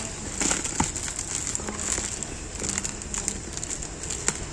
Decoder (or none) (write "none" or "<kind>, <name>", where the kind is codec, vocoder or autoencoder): none